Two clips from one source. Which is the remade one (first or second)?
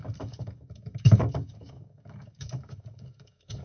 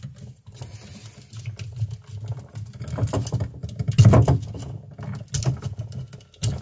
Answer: first